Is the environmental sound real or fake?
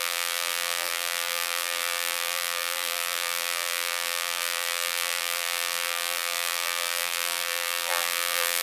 fake